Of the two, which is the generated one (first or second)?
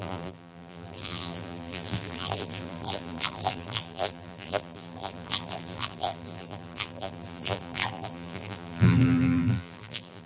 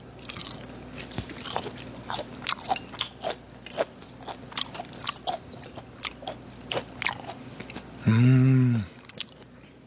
first